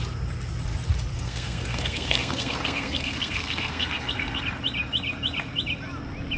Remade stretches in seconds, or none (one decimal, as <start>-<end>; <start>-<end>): 1.1-4.4